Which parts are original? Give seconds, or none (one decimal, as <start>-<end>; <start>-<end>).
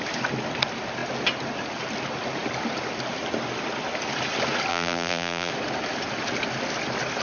0.0-4.7; 5.5-7.2